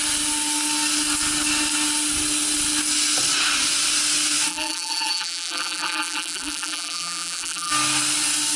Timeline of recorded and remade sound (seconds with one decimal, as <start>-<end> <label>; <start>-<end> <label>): 0.0-4.5 recorded; 4.5-7.7 remade; 7.7-8.6 recorded